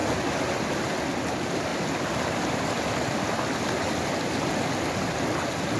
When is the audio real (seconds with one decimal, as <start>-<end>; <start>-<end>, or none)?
0.0-5.8